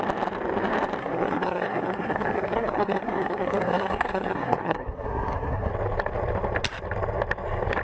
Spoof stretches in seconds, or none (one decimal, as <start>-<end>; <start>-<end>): 1.0-5.7

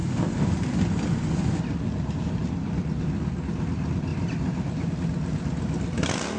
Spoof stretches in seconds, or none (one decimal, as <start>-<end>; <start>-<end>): 4.1-4.9

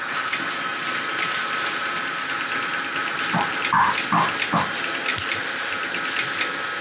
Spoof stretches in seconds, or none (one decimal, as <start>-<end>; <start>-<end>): 3.0-3.6; 5.1-5.7

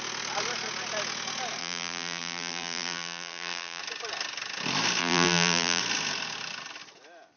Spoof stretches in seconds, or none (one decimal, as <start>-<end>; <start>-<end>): 1.6-3.8; 5.0-5.8

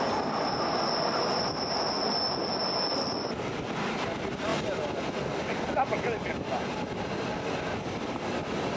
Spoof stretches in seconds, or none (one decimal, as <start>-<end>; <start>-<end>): none